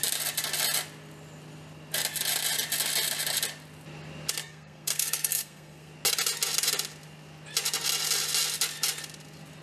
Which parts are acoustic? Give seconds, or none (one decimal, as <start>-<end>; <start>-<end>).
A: 0.0-4.4; 5.9-9.6